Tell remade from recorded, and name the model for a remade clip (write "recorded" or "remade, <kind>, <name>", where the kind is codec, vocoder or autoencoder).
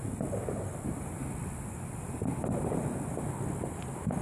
recorded